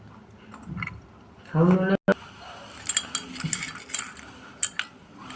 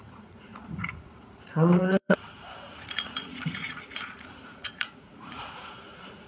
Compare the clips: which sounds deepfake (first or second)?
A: second